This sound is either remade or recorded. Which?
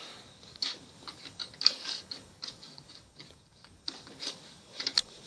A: remade